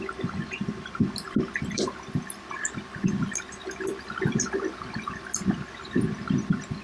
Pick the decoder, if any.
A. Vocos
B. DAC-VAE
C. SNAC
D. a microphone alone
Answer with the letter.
D